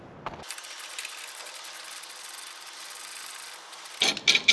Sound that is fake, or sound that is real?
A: real